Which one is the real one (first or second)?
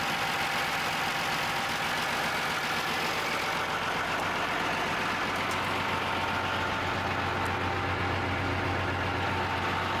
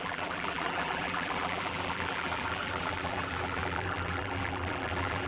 first